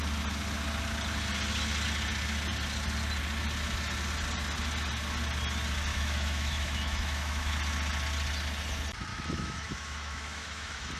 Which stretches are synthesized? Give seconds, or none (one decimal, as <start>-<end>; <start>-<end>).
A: 5.9-7.5; 9.1-11.0